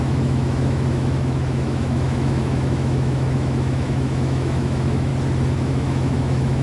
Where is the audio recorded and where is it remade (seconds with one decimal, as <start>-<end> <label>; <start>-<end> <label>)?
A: 0.0-5.1 remade; 5.1-5.6 recorded; 5.6-6.6 remade